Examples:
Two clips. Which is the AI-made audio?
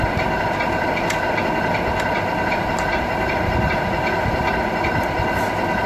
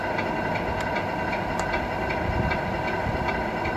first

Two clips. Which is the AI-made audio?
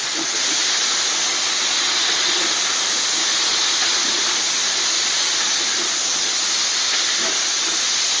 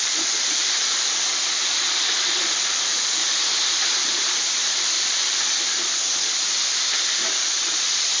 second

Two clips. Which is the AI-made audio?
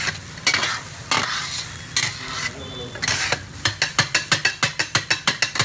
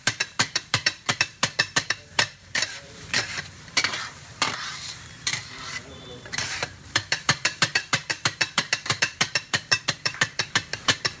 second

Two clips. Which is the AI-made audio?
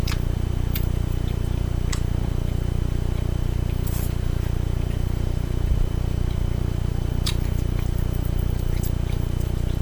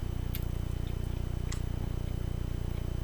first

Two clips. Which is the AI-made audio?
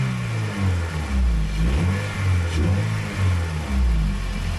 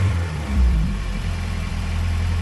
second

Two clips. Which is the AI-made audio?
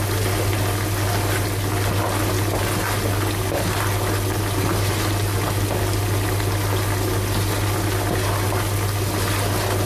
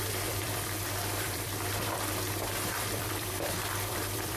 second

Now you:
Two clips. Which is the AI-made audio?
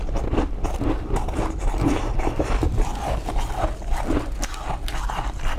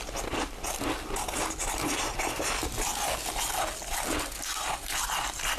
first